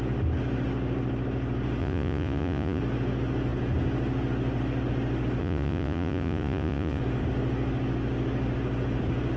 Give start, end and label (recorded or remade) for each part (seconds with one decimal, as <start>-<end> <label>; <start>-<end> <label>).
0.0-1.8 recorded; 1.8-2.8 remade; 2.8-5.4 recorded; 5.4-7.0 remade; 7.0-9.4 recorded